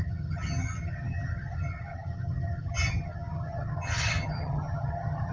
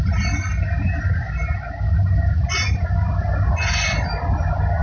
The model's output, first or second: first